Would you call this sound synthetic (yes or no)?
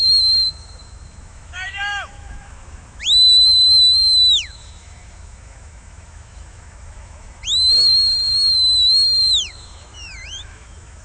yes